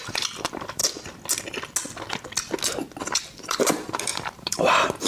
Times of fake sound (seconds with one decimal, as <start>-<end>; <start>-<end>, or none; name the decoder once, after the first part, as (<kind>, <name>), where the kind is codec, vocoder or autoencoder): 0.0-0.8 (vocoder, BigVGAN v2); 3.0-5.1